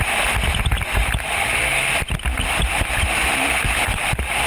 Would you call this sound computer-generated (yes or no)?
yes